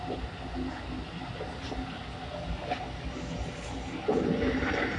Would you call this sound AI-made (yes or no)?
no